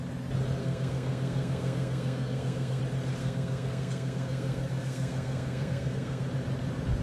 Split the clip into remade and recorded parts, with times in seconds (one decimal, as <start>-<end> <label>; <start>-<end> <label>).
0.0-0.6 recorded; 0.6-2.8 remade; 2.8-3.2 recorded; 3.2-6.2 remade; 6.2-7.0 recorded